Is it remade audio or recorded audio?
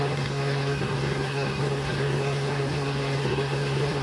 remade